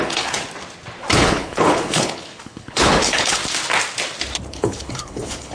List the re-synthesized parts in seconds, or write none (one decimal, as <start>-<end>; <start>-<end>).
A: 0.0-0.4; 1.2-3.4; 4.5-5.5